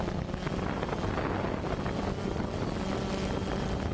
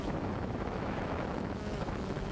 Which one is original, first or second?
first